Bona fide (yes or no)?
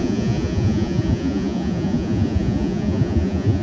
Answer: no